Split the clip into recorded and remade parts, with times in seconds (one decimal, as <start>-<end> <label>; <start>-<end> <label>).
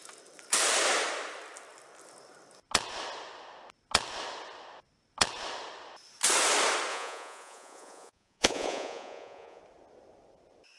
0.0-6.9 recorded; 6.9-9.6 remade; 9.6-10.8 recorded